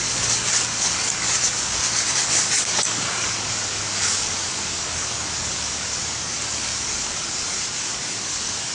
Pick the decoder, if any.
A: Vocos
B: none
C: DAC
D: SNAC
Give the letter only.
C